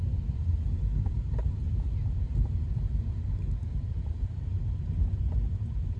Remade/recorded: remade